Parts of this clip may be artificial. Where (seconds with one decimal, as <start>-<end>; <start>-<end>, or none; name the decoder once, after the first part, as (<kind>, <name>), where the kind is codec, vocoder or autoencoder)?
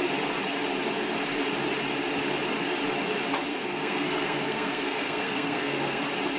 3.5-6.0 (codec, SNAC)